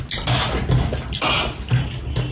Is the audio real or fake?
real